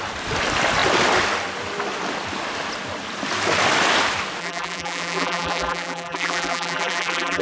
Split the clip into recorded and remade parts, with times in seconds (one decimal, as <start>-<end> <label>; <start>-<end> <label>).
0.0-4.4 recorded; 4.4-7.4 remade

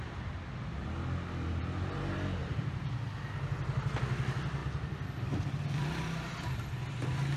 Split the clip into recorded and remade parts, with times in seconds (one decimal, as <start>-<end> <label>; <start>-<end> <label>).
0.0-2.4 recorded; 2.4-2.9 remade; 2.9-7.4 recorded